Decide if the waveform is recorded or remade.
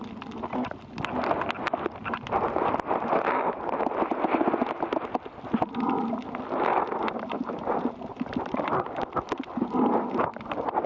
recorded